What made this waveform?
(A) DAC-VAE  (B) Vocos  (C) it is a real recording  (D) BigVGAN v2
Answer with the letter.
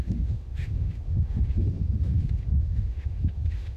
A